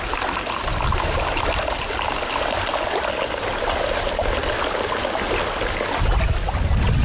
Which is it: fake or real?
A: real